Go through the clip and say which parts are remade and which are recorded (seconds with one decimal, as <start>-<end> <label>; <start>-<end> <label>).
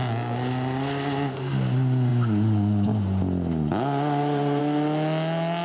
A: 0.0-5.6 recorded